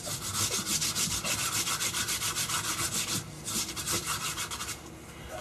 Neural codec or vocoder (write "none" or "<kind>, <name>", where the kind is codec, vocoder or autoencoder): none